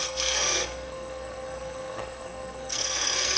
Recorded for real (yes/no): no